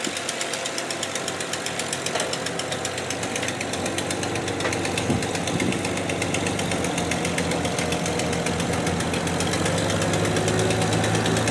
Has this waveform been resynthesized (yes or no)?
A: no